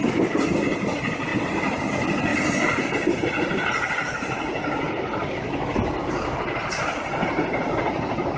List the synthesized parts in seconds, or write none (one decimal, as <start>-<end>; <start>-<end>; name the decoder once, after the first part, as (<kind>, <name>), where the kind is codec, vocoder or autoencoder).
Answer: none